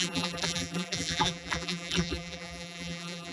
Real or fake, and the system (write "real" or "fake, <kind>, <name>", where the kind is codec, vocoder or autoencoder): fake, vocoder, BigVGAN v2